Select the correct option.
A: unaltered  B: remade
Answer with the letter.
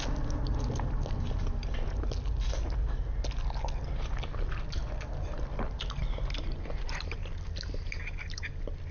A